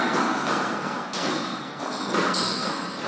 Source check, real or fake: fake